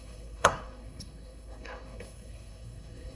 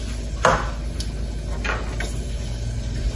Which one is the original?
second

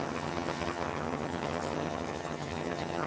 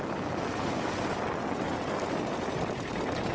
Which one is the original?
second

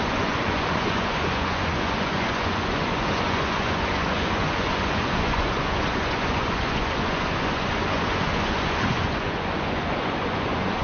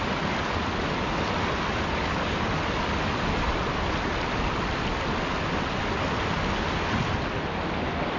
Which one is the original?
second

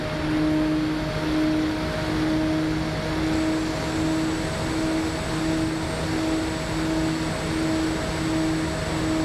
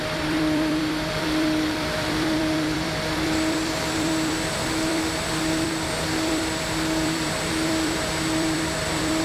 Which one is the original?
first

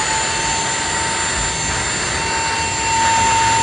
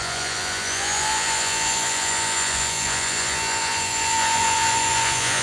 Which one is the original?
first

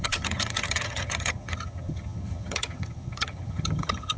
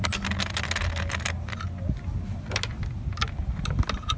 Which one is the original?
second